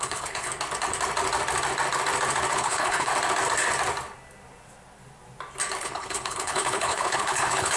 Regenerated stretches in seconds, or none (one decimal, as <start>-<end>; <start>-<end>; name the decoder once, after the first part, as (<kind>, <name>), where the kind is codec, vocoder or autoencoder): 0.0-0.5 (codec, HILCodec); 2.5-3.1; 5.8-7.8